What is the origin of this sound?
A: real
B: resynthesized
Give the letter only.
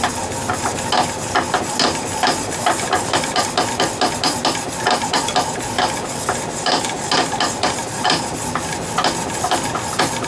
A